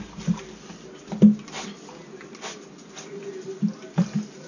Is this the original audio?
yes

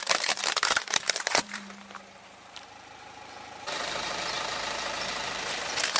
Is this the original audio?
no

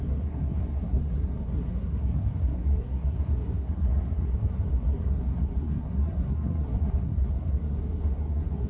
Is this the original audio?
no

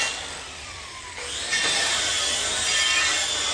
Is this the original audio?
no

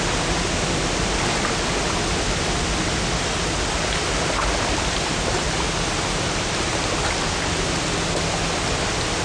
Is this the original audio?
yes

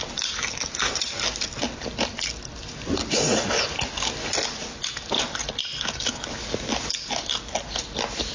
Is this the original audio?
yes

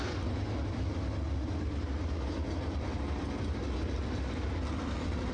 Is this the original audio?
yes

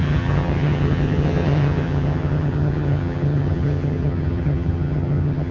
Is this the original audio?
no